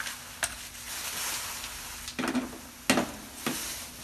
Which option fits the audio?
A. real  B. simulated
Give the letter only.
A